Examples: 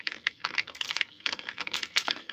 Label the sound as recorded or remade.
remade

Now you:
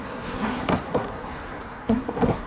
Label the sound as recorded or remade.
remade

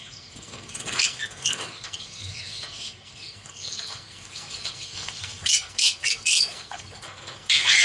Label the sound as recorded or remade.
remade